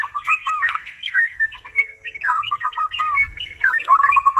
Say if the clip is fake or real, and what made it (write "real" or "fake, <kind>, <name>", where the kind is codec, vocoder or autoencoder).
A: fake, codec, SNAC